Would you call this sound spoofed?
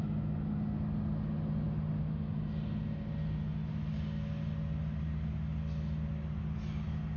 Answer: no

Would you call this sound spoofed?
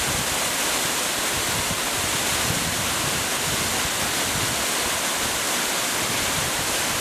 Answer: no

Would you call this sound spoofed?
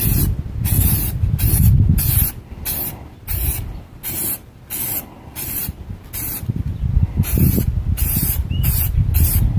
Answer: no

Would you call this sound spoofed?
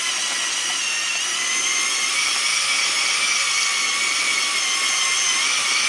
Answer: no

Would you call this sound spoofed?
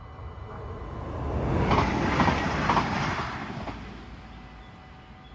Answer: no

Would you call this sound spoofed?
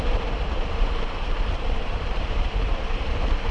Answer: yes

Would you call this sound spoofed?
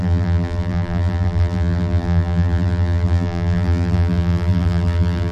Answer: yes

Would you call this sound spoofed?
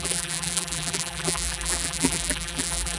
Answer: yes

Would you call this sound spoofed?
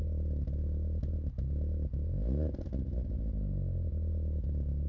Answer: no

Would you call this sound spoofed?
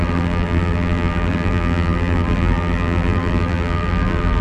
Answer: yes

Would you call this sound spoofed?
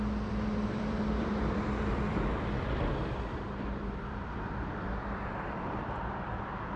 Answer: yes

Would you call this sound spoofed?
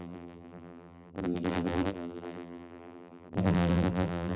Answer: yes